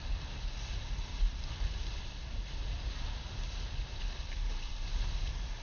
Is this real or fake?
real